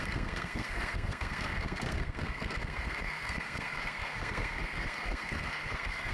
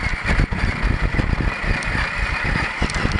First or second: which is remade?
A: first